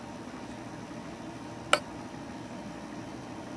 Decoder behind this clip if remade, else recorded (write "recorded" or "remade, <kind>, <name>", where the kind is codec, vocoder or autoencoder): recorded